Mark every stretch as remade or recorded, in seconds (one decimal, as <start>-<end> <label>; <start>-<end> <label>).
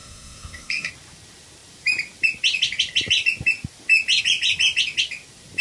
0.0-0.9 remade; 0.9-5.6 recorded